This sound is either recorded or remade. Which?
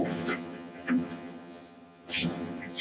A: remade